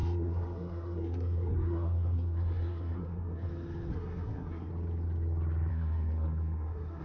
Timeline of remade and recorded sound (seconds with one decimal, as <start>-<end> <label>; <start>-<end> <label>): 0.0-3.5 remade; 3.5-3.9 recorded; 3.9-4.7 remade; 4.7-5.7 recorded; 5.7-7.0 remade